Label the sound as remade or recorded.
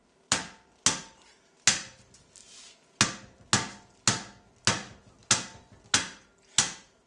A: recorded